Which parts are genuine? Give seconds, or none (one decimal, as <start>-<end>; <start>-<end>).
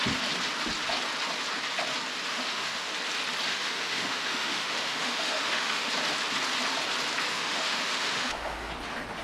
0.0-2.3; 2.9-3.5; 5.9-7.3; 8.7-9.2